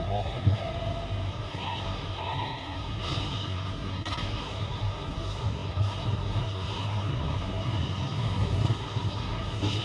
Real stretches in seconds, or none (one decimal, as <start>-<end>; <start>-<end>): 0.7-1.3